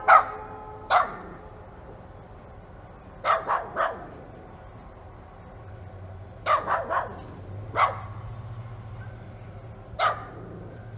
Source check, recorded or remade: recorded